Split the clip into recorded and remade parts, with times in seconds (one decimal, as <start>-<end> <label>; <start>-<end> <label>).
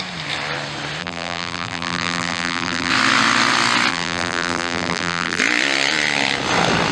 0.0-1.0 recorded; 1.0-2.9 remade; 2.9-3.9 recorded; 3.9-5.4 remade; 5.4-6.9 recorded